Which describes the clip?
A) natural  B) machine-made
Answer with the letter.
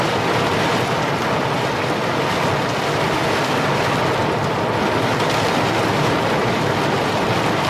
A